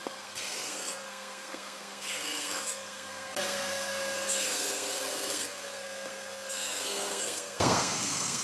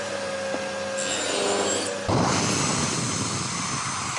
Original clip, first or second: second